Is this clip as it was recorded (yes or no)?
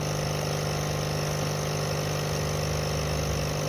yes